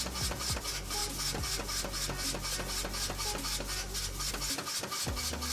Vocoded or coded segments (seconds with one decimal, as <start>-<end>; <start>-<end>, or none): none